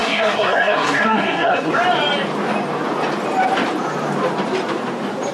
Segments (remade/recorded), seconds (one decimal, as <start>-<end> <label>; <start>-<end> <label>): 0.0-1.7 remade; 1.7-5.3 recorded